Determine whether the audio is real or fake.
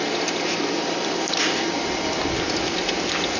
real